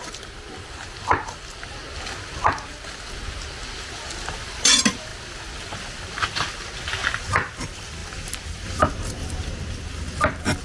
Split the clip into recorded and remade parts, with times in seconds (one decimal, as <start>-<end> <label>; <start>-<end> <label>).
0.0-10.6 recorded